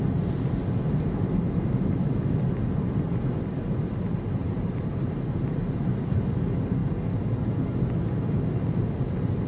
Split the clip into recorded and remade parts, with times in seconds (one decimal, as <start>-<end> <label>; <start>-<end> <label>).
0.0-4.4 recorded; 4.4-5.1 remade; 5.1-9.5 recorded